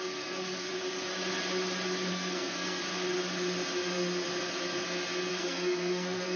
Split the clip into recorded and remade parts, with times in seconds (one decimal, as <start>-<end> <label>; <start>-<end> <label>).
0.0-0.7 remade; 0.7-2.1 recorded; 2.1-2.8 remade; 2.8-5.3 recorded; 5.3-6.4 remade